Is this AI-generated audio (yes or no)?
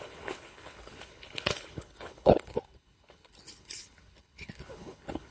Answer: yes